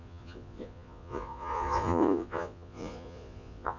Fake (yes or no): yes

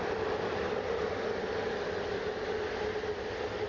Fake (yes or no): no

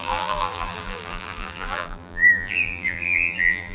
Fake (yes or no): yes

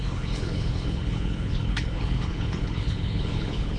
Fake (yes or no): yes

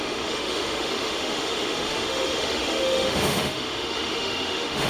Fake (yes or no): yes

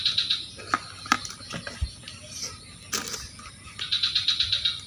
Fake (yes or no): no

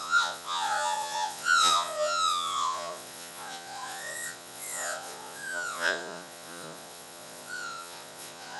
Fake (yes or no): yes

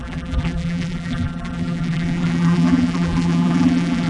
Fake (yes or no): yes